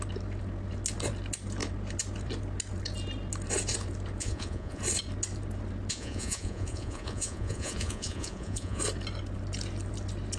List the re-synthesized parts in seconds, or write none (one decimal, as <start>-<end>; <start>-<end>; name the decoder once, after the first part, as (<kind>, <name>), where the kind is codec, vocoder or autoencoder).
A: 4.2-4.8 (vocoder, Vocos); 5.9-8.8